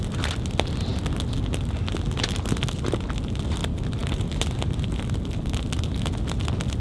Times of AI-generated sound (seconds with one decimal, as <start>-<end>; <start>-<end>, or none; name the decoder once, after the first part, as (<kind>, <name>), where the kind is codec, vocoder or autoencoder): none